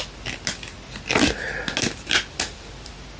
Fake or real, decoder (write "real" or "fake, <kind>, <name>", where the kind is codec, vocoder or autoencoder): real